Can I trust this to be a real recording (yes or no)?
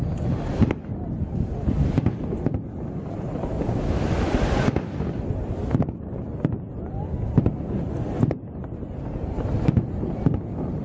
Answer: yes